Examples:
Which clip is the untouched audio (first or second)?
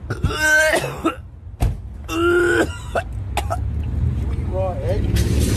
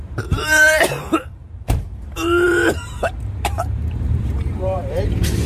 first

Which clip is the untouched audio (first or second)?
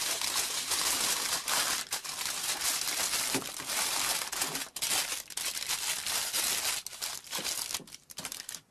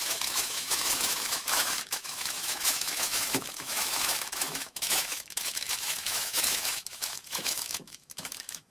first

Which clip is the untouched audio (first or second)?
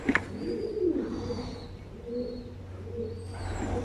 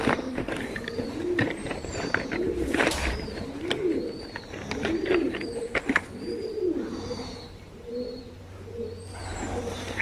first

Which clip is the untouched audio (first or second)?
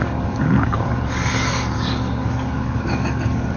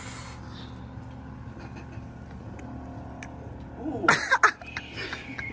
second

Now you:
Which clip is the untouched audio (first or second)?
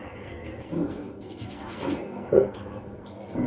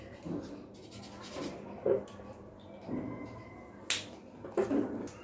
second